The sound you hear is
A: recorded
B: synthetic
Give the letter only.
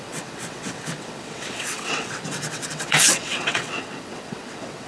B